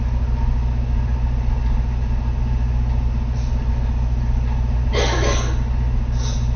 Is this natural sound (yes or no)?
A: yes